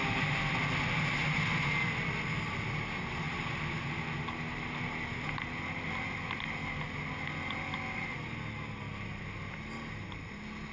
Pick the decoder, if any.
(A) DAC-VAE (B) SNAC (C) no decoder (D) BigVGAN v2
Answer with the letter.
C